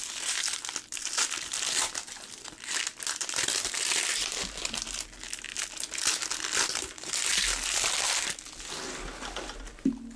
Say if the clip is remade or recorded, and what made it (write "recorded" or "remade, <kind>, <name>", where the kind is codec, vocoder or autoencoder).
recorded